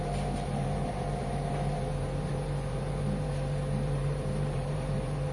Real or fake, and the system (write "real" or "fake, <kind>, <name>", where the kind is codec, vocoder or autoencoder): fake, vocoder, BigVGAN v2